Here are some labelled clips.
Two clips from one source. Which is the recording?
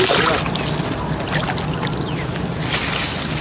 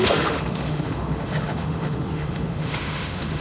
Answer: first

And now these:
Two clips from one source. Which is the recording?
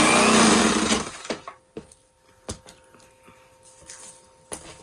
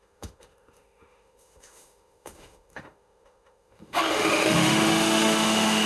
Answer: first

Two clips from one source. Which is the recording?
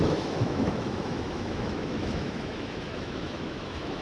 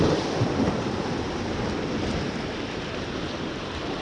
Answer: second